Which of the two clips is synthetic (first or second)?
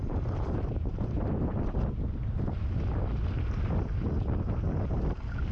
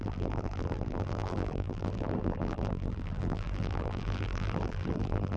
second